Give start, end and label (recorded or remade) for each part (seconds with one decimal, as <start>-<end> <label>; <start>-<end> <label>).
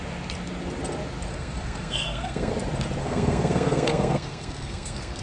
0.0-1.3 recorded; 1.3-2.5 remade; 2.5-3.0 recorded; 3.0-5.2 remade